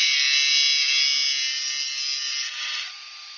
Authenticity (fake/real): real